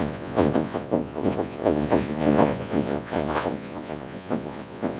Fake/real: fake